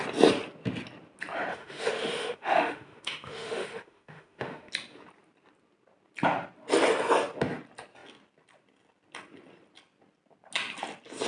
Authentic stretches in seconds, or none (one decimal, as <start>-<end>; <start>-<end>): 0.0-1.5; 4.7-11.3